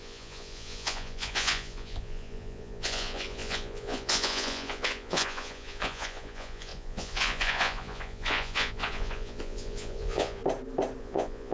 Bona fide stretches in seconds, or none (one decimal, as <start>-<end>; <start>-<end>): 10.4-11.0